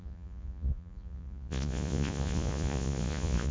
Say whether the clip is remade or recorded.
remade